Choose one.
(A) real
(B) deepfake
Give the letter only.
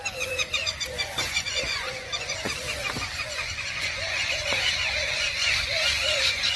B